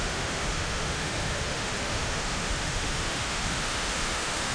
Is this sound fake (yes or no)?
yes